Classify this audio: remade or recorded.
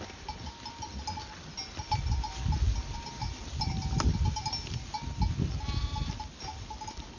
recorded